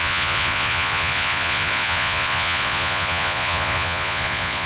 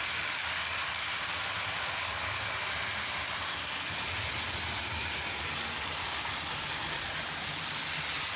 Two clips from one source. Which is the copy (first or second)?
first